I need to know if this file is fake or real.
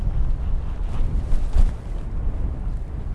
real